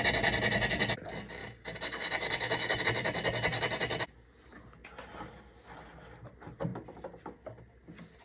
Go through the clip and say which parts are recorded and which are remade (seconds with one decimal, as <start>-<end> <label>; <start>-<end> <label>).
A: 0.0-1.4 recorded; 1.4-2.8 remade; 2.8-8.2 recorded